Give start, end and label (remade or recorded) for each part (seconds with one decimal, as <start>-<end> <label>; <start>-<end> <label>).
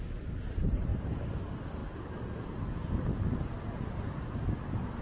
0.0-0.9 recorded; 0.9-1.4 remade; 1.4-5.0 recorded